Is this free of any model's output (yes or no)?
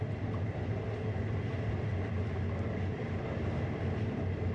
yes